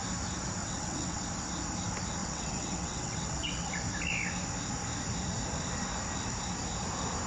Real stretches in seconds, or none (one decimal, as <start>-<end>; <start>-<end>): 0.0-0.6; 1.2-2.2; 3.7-7.3